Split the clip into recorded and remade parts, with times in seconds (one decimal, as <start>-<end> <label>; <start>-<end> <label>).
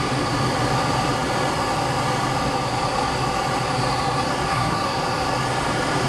0.0-4.5 recorded; 4.5-5.0 remade; 5.0-6.1 recorded